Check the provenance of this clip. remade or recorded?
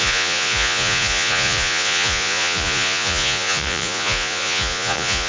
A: remade